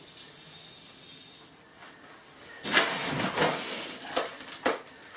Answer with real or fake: real